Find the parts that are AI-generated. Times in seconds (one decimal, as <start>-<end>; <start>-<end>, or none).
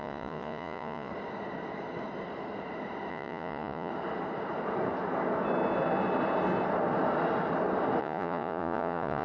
0.0-1.1; 3.1-3.9; 8.0-9.2